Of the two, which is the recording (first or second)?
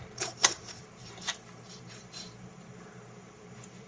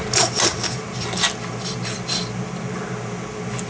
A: second